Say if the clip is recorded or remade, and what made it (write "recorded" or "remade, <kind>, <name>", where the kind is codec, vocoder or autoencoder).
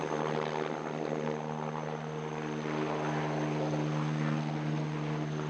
recorded